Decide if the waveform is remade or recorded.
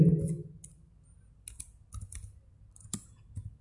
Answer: recorded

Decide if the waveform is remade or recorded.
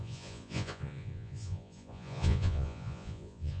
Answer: remade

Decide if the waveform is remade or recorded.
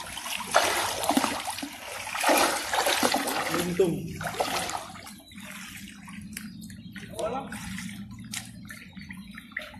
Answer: recorded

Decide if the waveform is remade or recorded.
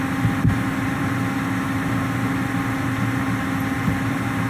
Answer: recorded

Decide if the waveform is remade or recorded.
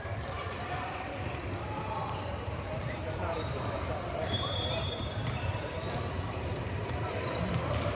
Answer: remade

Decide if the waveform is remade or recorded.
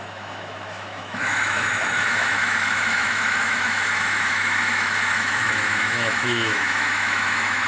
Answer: remade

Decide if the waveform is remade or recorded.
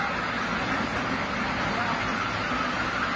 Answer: recorded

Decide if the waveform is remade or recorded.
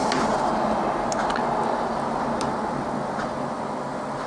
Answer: recorded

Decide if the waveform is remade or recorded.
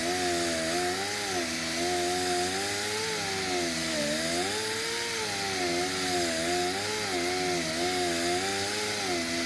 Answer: recorded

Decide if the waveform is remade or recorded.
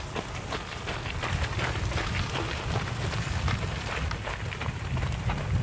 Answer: recorded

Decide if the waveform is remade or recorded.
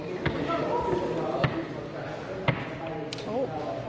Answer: recorded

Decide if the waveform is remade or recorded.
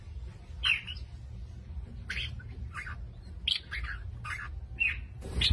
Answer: recorded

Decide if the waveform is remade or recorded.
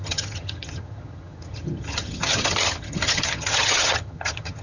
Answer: remade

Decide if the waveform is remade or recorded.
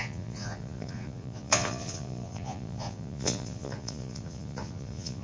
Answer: remade